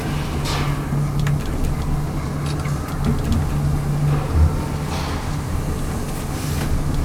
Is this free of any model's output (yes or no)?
yes